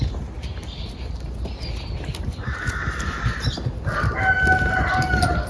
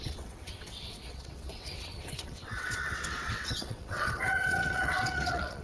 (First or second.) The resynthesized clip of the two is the second